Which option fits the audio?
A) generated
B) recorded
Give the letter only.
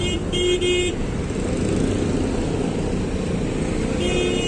B